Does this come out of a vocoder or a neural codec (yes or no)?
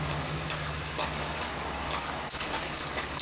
yes